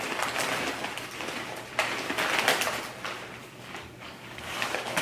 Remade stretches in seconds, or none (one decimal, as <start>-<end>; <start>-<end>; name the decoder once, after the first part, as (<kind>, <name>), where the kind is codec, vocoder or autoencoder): 3.4-5.0 (codec, DAC)